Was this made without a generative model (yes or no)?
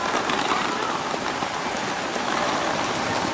yes